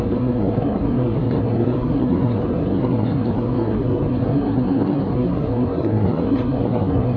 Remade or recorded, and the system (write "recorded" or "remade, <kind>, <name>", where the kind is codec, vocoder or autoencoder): remade, codec, SNAC